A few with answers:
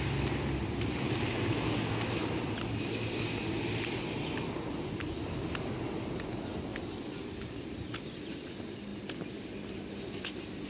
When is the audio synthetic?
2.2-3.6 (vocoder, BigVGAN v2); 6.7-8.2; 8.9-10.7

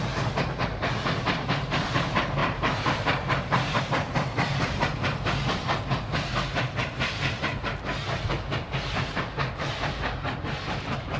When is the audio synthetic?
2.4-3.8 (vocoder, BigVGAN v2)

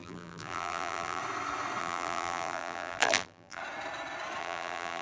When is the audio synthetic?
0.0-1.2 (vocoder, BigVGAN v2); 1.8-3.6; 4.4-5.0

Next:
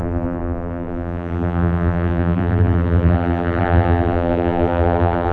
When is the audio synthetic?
0.0-5.3 (vocoder, BigVGAN v2)

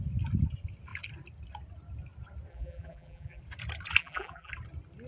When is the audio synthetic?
2.5-3.4 (vocoder, BigVGAN v2); 4.0-4.5

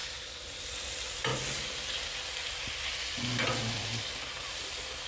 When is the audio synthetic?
0.0-0.6 (vocoder, BigVGAN v2)